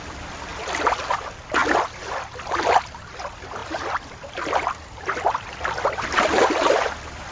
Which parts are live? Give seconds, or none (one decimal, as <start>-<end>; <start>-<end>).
0.5-1.1; 1.6-2.6